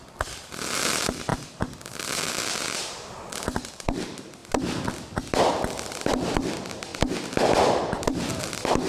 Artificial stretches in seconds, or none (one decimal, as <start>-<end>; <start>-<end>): 0.0-1.3; 3.6-6.9; 7.8-8.9